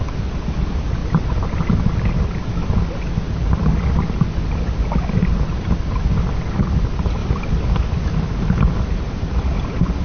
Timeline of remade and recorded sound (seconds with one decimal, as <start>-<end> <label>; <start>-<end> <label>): 0.0-10.0 recorded